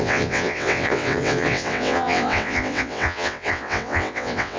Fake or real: fake